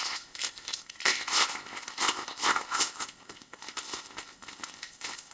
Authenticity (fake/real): fake